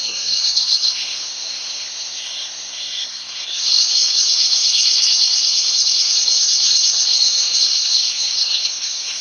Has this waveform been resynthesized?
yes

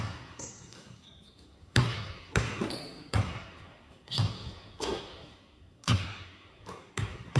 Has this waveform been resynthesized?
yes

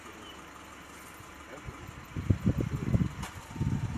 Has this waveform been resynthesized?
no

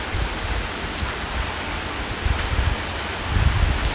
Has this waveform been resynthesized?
no